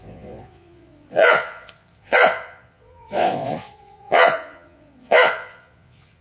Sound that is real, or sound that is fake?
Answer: fake